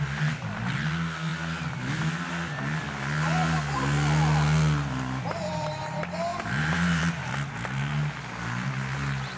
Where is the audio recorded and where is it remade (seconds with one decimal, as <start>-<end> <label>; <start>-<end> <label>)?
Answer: 0.0-6.3 recorded; 6.3-7.0 remade; 7.0-9.4 recorded